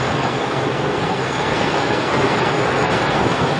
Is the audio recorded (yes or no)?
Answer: no